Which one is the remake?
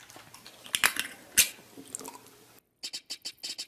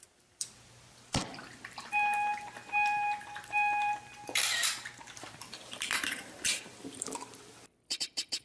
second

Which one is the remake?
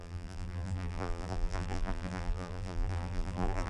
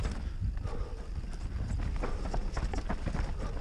first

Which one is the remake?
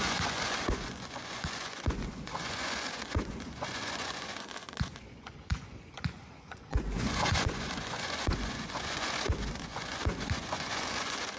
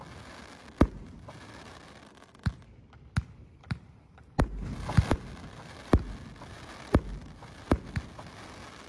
first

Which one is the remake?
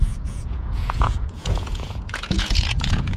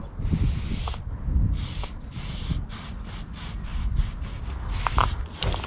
first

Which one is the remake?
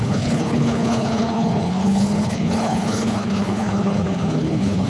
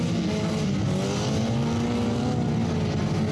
first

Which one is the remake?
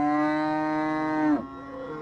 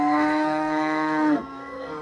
second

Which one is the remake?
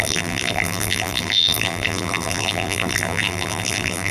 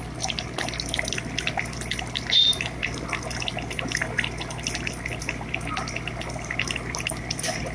first